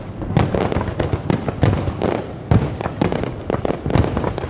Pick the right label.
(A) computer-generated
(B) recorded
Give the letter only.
B